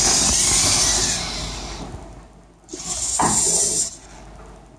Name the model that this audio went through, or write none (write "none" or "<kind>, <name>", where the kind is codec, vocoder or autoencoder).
none